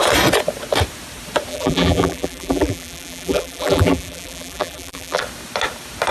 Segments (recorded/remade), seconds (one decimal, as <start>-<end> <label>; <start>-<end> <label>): 0.0-1.5 recorded; 1.5-5.2 remade; 5.2-6.1 recorded